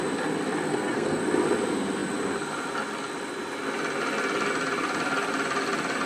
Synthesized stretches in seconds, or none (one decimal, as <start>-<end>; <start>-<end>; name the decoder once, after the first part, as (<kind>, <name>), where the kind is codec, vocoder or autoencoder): 0.7-1.2 (codec, SNAC)